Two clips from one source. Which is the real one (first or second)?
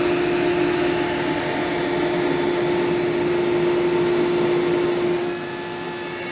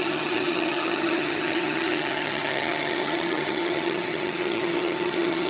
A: first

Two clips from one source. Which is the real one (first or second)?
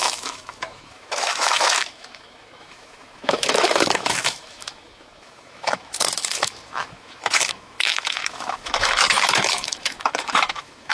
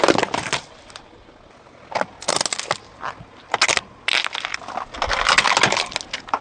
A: second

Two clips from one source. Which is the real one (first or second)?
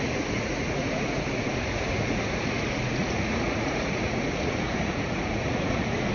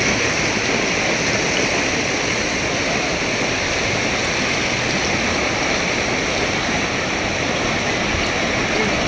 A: second